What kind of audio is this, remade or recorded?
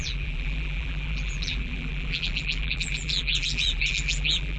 remade